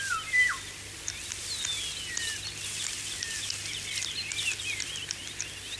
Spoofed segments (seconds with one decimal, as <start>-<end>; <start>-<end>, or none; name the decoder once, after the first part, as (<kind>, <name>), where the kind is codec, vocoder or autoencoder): none